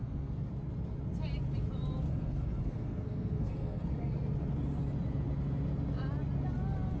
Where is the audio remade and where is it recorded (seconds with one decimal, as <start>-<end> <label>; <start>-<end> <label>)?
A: 0.0-0.5 remade; 0.5-2.1 recorded; 2.1-4.1 remade; 4.1-7.0 recorded